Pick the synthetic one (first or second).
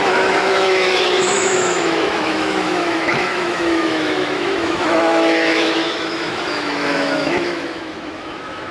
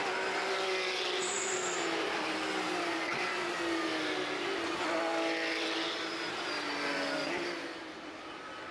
first